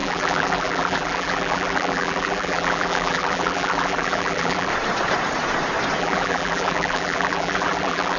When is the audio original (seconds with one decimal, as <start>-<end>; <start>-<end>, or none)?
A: 4.7-6.0

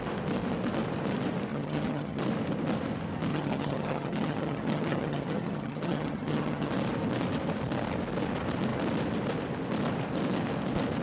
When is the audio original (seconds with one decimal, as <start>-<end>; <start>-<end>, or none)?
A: 0.0-1.5; 2.2-3.3; 6.7-11.0

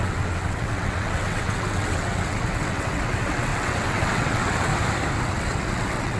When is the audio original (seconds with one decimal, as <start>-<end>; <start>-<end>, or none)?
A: 4.7-5.2

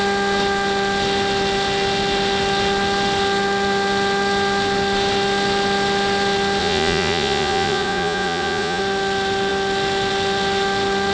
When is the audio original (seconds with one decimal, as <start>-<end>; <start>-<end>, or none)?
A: 0.0-6.6; 8.8-11.1

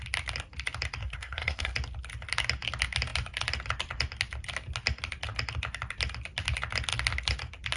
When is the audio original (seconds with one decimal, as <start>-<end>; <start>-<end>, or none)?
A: 0.0-1.0; 1.7-7.8

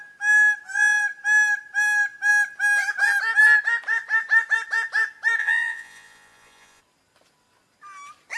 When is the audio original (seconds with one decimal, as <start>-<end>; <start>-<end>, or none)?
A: 0.0-5.4; 6.8-8.4